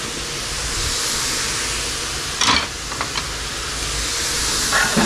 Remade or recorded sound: recorded